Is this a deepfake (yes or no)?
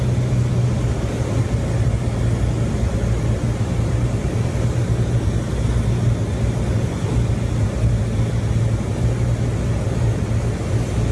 no